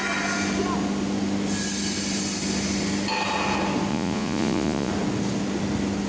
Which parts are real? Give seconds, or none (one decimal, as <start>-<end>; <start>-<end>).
0.0-3.9; 4.9-6.1